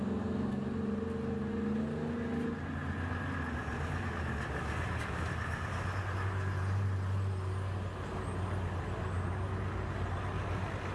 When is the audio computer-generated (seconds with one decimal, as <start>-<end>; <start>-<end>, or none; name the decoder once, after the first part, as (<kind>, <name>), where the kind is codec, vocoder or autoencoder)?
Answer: none